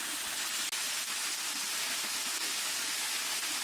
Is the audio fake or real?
real